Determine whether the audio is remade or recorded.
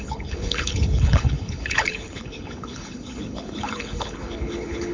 remade